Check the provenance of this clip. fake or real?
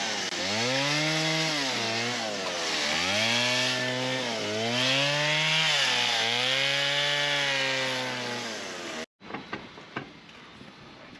real